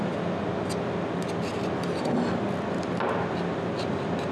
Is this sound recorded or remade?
recorded